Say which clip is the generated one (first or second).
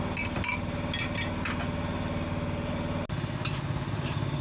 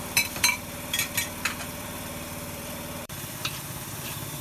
second